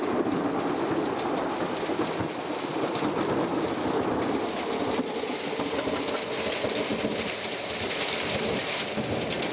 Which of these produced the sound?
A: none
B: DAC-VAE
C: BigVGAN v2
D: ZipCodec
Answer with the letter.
A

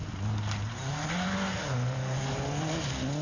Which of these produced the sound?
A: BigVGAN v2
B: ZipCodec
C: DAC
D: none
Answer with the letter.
D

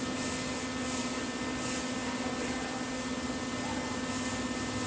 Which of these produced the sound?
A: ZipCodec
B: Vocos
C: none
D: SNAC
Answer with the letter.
C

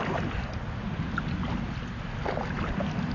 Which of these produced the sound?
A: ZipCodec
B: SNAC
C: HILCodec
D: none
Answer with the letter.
D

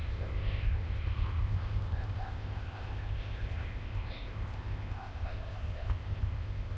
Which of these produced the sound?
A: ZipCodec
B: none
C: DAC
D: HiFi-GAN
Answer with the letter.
A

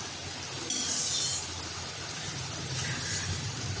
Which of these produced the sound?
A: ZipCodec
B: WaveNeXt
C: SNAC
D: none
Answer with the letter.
D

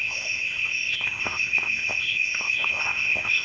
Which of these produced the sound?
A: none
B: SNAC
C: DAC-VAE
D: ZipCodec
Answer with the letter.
D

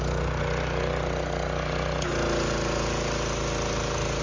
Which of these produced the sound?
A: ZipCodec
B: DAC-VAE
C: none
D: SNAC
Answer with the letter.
C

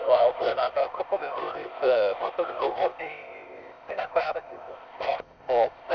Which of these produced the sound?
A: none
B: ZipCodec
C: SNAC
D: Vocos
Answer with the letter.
B